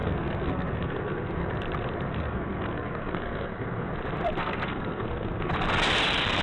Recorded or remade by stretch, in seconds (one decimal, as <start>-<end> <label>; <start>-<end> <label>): 0.0-1.5 remade; 1.5-2.1 recorded; 2.1-3.9 remade; 3.9-4.4 recorded; 4.4-5.5 remade; 5.5-6.4 recorded